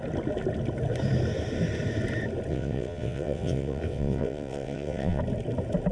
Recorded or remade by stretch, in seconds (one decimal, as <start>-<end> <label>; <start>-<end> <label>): 0.0-2.5 recorded; 2.5-5.2 remade; 5.2-5.9 recorded